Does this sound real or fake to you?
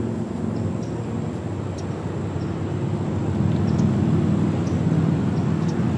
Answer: real